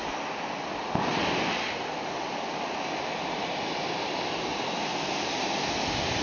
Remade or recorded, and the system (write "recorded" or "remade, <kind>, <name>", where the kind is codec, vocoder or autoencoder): recorded